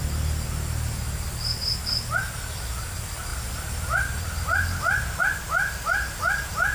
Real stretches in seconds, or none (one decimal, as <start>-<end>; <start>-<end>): 0.0-6.7